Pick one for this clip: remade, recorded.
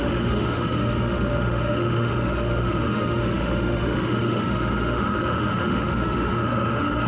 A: remade